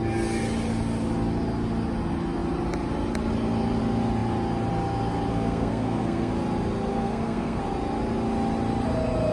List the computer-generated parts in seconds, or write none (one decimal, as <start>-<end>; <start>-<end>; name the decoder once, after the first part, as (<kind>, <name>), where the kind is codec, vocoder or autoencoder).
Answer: 5.3-6.3 (codec, SNAC); 6.9-7.6